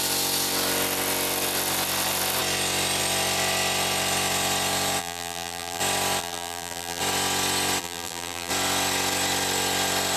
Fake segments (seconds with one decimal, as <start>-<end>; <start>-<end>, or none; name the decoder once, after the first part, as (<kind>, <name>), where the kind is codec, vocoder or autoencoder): 5.0-5.8 (vocoder, BigVGAN v2); 6.2-7.0; 7.8-8.5